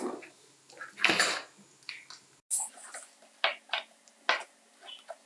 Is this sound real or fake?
real